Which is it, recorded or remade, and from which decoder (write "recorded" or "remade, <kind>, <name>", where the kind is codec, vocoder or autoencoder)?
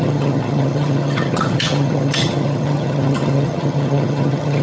remade, vocoder, HiFi-GAN